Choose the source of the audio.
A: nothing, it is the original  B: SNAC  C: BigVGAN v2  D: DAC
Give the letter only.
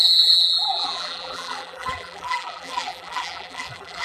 C